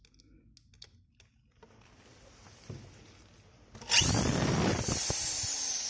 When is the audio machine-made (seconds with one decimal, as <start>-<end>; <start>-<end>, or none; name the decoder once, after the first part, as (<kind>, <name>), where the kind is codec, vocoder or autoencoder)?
2.1-5.9 (vocoder, BigVGAN v2)